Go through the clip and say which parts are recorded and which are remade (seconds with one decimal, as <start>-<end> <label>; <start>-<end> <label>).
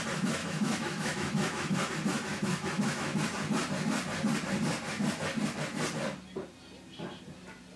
0.0-0.4 recorded; 0.4-1.9 remade; 1.9-2.3 recorded; 2.3-3.2 remade; 3.2-7.8 recorded